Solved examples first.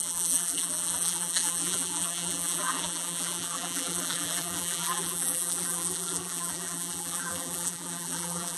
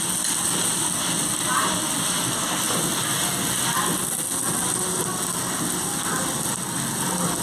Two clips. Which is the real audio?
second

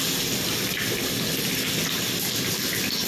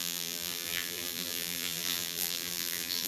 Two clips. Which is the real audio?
first